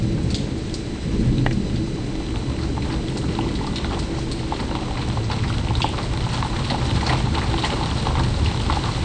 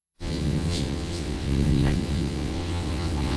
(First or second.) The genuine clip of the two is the first